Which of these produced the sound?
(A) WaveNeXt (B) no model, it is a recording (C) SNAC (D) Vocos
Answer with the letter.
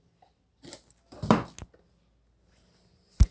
B